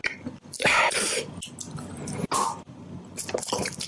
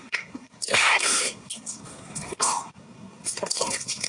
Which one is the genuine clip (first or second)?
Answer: first